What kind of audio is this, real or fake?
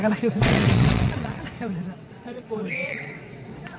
fake